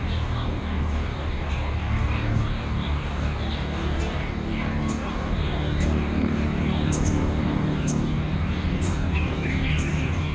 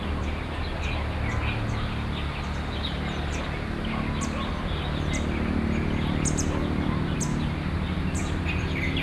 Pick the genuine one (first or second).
second